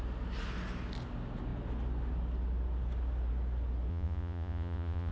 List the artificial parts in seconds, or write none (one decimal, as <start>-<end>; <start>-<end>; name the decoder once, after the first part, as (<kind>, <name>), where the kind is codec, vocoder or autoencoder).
3.9-5.1 (vocoder, Vocos)